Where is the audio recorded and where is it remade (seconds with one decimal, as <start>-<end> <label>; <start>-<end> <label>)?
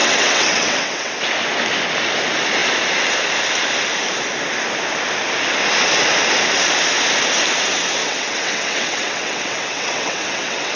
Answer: 0.0-1.1 remade; 1.1-8.0 recorded; 8.0-10.8 remade